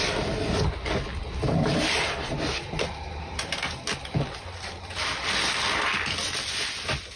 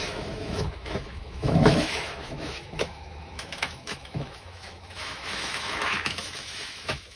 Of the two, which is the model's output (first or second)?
second